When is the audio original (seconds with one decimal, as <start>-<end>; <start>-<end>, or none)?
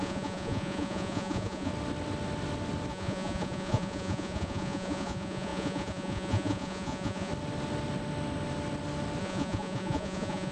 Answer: 1.7-2.9; 7.3-9.2